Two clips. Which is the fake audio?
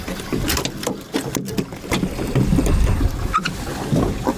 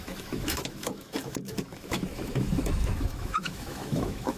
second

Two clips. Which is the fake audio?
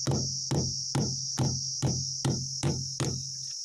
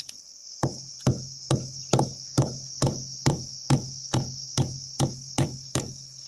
second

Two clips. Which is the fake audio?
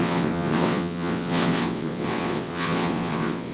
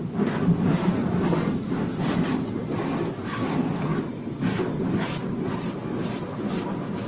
first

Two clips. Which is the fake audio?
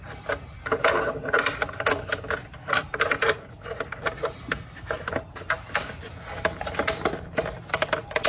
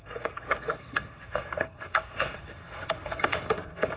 second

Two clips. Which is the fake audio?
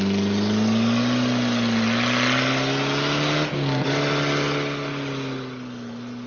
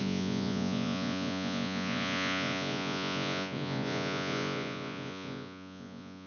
second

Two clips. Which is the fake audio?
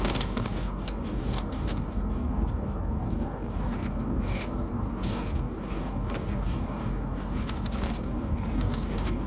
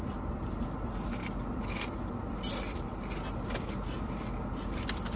first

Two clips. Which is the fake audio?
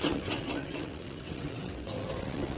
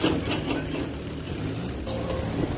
first